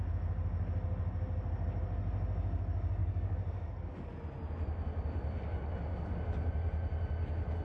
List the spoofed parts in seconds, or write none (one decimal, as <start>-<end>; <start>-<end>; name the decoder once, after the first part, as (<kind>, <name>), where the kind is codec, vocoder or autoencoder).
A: 3.0-4.1 (codec, DAC)